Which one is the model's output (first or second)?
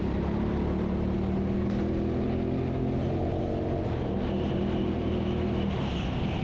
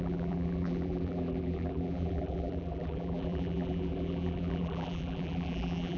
second